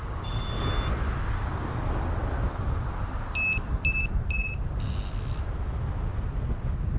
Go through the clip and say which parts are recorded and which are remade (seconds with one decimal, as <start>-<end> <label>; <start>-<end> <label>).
0.0-0.7 remade; 0.7-7.0 recorded